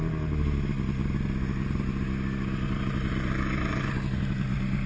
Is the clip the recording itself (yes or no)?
yes